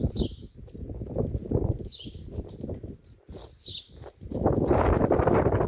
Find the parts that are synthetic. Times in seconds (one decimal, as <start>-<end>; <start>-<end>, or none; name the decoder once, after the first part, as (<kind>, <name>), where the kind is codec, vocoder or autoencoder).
none